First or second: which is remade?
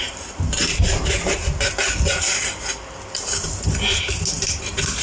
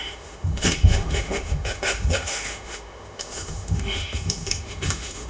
second